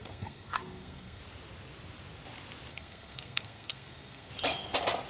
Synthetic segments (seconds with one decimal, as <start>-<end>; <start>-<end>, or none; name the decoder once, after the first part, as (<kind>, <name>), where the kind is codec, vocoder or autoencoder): 0.0-1.2 (codec, SNAC); 2.7-4.3